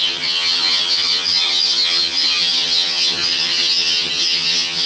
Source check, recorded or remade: remade